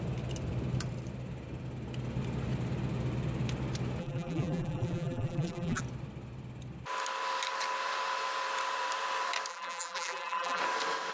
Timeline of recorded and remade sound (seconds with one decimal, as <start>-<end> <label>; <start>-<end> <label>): 0.0-4.0 recorded; 4.0-5.8 remade; 5.8-9.5 recorded; 9.5-10.6 remade; 10.6-11.1 recorded